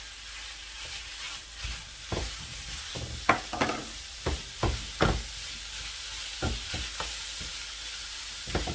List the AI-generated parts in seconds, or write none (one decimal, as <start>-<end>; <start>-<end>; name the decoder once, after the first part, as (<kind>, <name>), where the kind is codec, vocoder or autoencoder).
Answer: 3.8-4.6 (vocoder, BigVGAN v2)

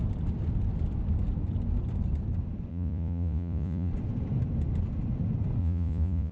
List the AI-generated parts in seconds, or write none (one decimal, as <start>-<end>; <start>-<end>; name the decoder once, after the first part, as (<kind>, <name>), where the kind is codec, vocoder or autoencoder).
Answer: 2.7-3.9 (vocoder, Vocos); 5.6-6.3

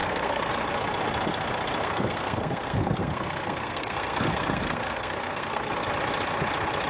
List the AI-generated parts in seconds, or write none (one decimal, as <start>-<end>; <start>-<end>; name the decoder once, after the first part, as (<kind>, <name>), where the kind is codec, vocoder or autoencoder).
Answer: 0.0-0.5 (codec, SNAC); 1.8-5.9

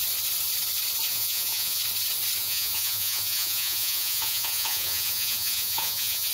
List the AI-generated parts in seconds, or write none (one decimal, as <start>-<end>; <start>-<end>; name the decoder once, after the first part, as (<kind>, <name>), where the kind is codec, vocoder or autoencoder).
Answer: 1.1-1.8 (vocoder, Vocos); 2.4-6.3